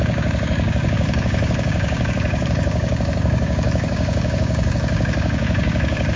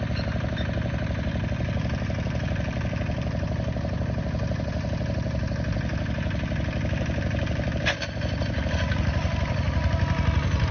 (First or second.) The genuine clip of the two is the second